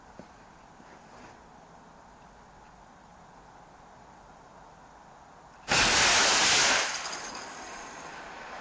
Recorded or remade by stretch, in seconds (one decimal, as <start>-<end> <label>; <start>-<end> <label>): 0.0-8.6 recorded